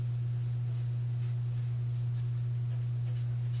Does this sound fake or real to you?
real